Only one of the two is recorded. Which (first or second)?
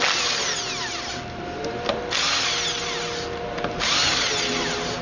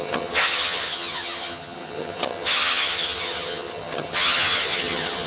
first